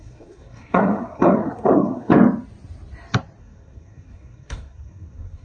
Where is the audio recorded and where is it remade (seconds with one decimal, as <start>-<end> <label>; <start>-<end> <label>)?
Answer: 0.0-2.1 remade; 2.1-3.4 recorded; 3.4-5.4 remade